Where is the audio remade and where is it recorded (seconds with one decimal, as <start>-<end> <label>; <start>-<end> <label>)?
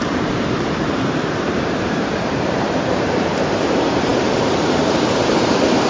0.0-5.9 remade